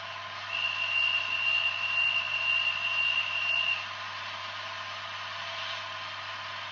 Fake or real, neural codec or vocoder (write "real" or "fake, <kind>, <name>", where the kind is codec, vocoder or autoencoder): real